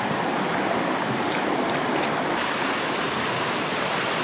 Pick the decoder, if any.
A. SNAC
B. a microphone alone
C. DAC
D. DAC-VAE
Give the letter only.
B